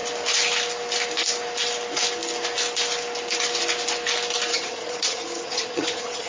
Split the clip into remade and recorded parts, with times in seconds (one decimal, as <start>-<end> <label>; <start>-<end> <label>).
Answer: 0.0-4.5 recorded; 4.5-6.3 remade